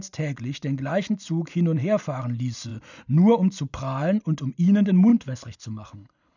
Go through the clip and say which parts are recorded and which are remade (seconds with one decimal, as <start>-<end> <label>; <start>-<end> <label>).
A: 0.0-5.1 recorded; 5.1-6.4 remade